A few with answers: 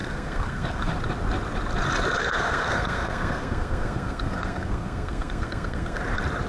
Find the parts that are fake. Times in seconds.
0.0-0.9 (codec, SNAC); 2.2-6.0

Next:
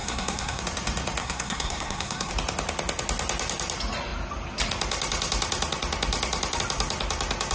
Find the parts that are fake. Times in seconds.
0.0-0.6 (codec, SNAC); 1.2-2.3